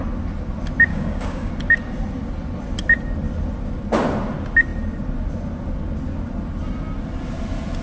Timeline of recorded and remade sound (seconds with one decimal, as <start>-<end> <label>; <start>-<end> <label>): 0.0-0.9 recorded; 0.9-1.5 remade; 1.5-7.8 recorded